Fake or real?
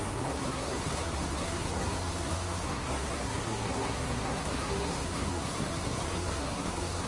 fake